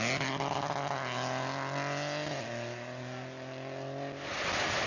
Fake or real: real